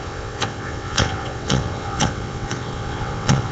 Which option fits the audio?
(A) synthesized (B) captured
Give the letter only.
A